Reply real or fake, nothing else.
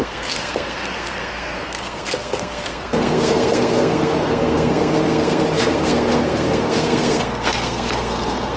fake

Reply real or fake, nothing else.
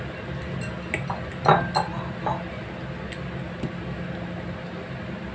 real